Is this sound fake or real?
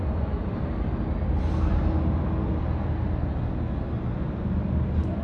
real